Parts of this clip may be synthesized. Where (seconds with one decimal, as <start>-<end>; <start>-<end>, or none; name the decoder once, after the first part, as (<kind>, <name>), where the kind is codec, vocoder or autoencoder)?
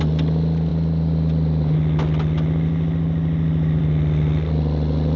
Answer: none